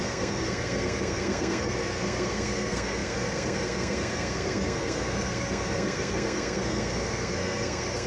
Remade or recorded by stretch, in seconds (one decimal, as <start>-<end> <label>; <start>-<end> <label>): 0.0-8.1 remade